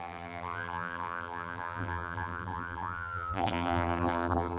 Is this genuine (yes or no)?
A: no